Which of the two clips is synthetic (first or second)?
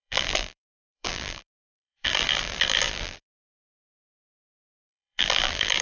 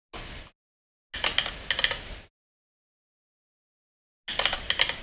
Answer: first